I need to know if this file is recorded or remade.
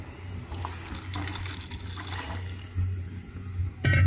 recorded